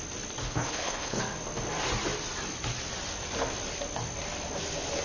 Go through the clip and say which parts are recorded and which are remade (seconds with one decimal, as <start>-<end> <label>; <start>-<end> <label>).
0.0-0.4 recorded; 0.4-1.2 remade; 1.2-5.0 recorded